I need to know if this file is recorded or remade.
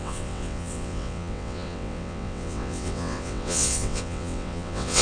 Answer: remade